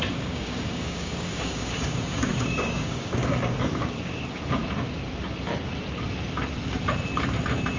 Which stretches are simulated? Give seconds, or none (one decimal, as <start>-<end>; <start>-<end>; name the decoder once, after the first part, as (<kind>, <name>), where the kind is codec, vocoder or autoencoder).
0.0-4.6 (codec, DAC)